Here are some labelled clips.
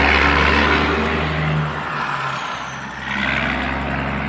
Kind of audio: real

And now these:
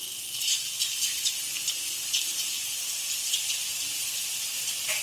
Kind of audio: real